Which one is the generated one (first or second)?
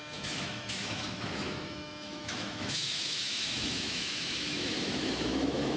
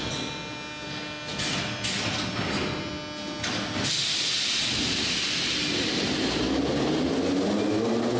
first